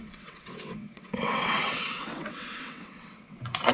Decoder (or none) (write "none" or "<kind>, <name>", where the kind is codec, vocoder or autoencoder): vocoder, WaveNeXt